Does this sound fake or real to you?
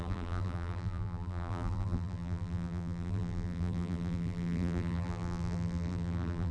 fake